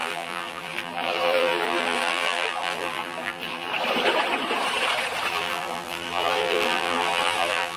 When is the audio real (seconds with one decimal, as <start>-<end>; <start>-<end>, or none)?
3.7-5.3